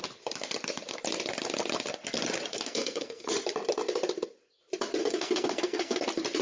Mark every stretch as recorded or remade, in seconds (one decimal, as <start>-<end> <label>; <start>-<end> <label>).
0.0-2.5 recorded; 2.5-3.3 remade; 3.3-5.0 recorded; 5.0-6.0 remade; 6.0-6.4 recorded